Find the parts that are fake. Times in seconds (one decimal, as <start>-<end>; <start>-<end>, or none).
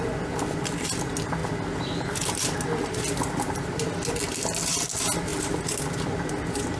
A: 5.3-6.2